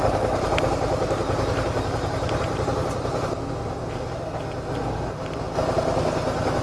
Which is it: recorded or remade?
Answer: recorded